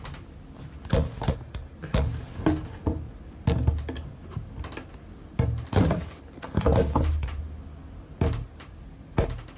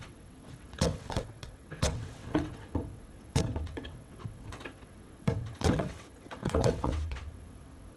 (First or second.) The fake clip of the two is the second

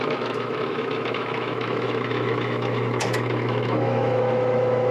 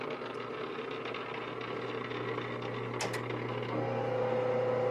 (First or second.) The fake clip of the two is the first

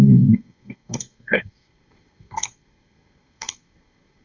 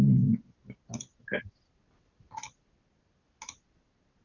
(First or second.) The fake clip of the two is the first